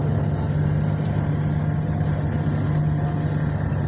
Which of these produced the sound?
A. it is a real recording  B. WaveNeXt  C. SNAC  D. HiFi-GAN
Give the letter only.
A